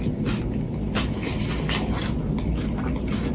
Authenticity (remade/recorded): recorded